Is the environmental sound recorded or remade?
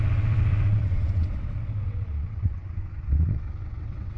remade